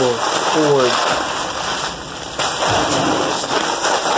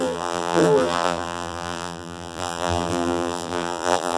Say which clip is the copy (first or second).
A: second